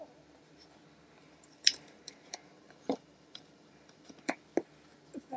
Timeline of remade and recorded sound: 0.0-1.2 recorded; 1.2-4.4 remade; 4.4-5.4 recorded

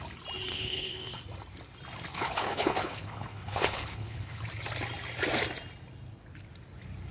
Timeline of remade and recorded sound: 0.0-0.5 recorded; 0.5-1.2 remade; 1.2-2.1 recorded; 2.1-4.4 remade; 4.4-7.1 recorded

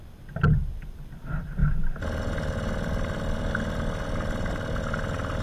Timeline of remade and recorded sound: 0.0-5.4 recorded